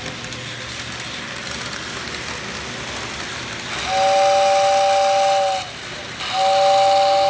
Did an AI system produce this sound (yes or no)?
no